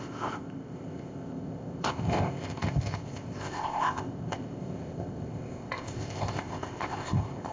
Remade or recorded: remade